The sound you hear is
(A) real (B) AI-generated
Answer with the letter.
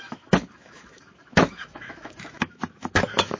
B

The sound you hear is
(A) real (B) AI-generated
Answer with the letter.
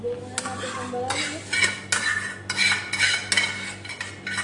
A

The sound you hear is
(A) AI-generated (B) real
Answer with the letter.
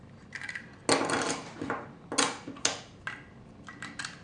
B